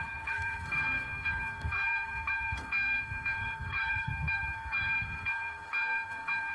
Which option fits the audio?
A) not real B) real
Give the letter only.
A